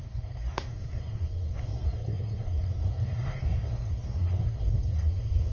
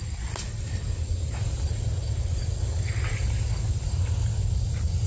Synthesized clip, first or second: first